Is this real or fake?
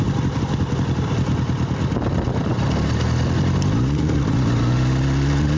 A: real